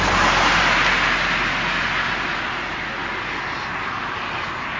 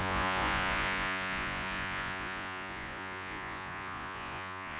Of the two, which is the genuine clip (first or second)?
first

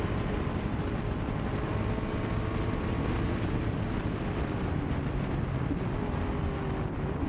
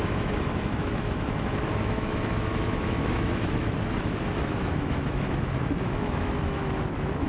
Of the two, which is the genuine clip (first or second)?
first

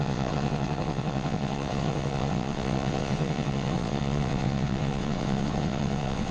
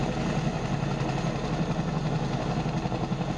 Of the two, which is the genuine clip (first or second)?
second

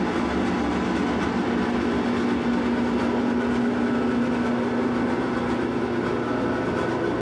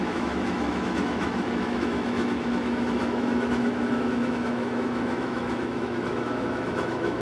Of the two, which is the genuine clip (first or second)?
first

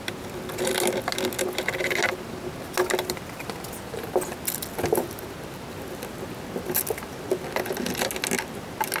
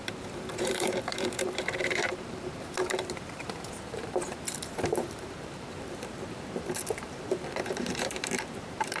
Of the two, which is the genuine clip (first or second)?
first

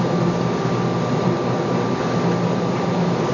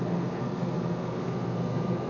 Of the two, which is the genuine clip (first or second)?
first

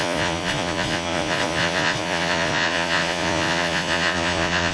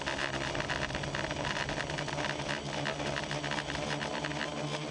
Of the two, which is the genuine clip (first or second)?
second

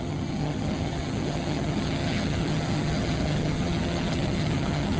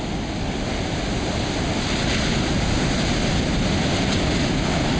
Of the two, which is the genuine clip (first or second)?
second